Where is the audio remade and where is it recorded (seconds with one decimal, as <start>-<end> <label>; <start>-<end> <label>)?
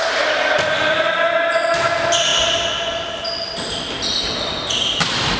0.0-5.4 recorded